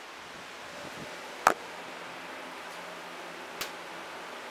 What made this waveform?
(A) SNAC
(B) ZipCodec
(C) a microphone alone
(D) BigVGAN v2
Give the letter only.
C